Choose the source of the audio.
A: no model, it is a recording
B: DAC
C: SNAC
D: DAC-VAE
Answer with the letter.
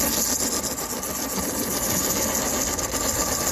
A